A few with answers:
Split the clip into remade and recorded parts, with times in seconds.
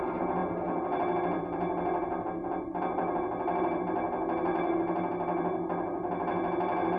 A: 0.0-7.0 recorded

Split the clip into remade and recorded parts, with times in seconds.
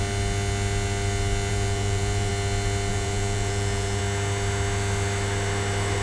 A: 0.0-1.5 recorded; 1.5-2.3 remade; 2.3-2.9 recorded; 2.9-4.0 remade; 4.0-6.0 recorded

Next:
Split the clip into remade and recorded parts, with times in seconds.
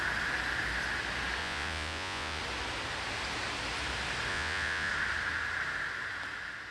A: 0.0-1.4 recorded; 1.4-2.4 remade; 2.4-4.3 recorded; 4.3-4.9 remade; 4.9-6.7 recorded